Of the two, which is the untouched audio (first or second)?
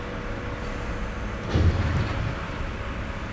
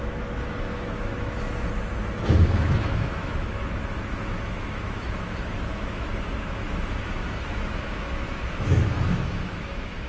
first